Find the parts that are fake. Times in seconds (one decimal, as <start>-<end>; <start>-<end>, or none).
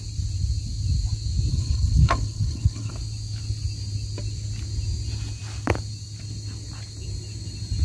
1.5-2.9